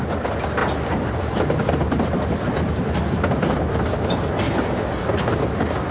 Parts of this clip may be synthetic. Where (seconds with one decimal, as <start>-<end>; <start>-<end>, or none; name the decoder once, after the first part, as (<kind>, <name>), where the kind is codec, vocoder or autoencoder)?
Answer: none